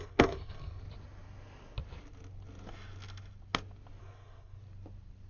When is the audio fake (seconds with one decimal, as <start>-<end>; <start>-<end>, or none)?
0.0-0.8; 4.0-4.6